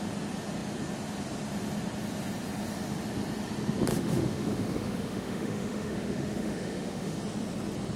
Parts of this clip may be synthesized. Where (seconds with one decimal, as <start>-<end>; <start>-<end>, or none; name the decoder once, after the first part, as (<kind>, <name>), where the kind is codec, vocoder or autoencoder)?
3.9-7.2 (autoencoder, DAC-VAE)